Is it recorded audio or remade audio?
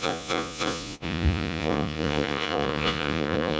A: remade